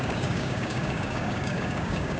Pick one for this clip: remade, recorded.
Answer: remade